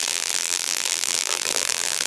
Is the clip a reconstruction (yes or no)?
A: yes